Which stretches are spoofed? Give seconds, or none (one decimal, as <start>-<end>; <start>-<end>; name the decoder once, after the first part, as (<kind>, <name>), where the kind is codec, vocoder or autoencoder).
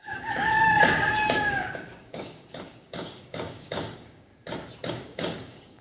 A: 0.0-4.3 (codec, DAC); 4.9-5.8